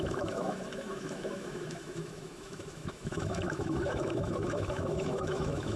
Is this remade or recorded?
remade